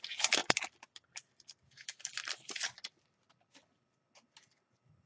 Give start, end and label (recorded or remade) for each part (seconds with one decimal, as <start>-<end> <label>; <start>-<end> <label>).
0.0-0.4 recorded; 0.4-3.5 remade; 3.5-5.1 recorded

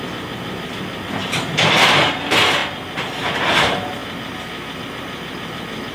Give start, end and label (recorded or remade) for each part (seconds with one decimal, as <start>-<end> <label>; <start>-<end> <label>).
0.0-1.2 recorded; 1.2-1.8 remade; 1.8-4.0 recorded; 4.0-4.8 remade; 4.8-5.9 recorded

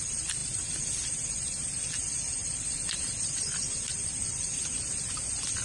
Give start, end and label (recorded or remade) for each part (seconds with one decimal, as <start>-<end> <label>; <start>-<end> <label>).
0.0-0.4 recorded; 0.4-3.8 remade; 3.8-5.6 recorded

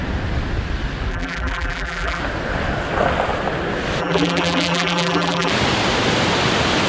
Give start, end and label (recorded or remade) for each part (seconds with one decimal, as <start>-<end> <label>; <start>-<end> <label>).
0.0-1.1 recorded; 1.1-2.2 remade; 2.2-4.0 recorded; 4.0-5.5 remade; 5.5-6.9 recorded